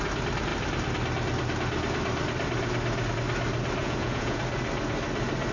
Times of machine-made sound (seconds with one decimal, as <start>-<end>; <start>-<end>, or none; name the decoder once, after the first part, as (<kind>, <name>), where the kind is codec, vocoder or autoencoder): 3.8-4.4 (vocoder, Vocos)